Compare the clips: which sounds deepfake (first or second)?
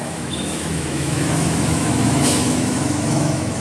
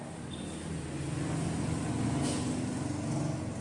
first